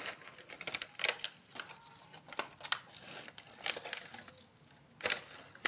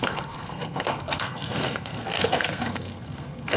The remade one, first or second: second